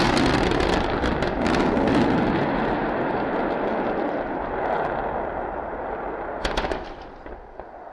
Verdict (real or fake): real